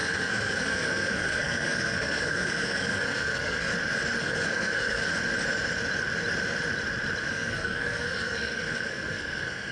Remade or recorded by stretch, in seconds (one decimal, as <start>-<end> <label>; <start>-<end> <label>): 0.0-3.7 remade; 3.7-4.2 recorded; 4.2-5.1 remade; 5.1-7.3 recorded; 7.3-9.7 remade